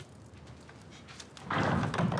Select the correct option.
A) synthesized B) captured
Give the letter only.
B